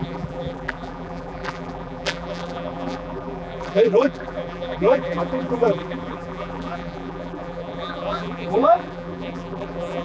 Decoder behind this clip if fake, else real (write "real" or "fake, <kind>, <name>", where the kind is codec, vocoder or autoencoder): fake, vocoder, BigVGAN v2